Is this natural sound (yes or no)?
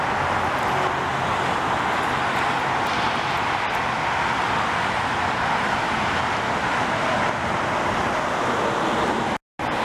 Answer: yes